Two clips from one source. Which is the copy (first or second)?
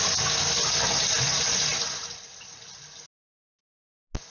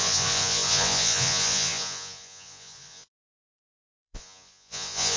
second